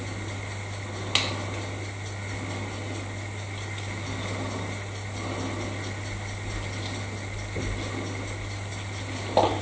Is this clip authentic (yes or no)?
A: yes